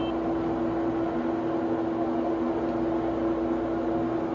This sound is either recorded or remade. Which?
recorded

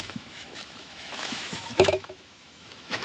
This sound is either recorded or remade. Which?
remade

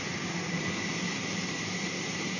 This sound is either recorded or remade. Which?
recorded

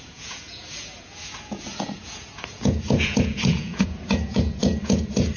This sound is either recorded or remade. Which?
remade